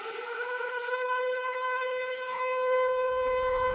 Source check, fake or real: fake